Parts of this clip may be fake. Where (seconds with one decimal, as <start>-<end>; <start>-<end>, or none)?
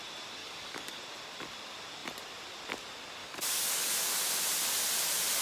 0.4-1.0; 3.2-4.1